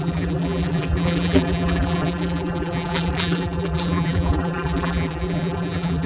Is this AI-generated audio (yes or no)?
yes